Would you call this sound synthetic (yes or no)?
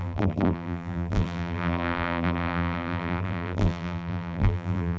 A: yes